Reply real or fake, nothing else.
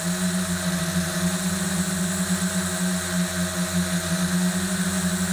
real